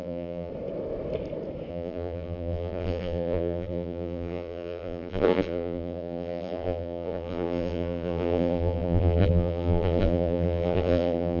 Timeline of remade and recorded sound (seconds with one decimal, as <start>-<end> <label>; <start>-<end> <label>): 0.0-0.5 remade; 0.5-1.7 recorded; 1.7-11.4 remade